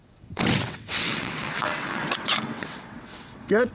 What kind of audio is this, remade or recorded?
remade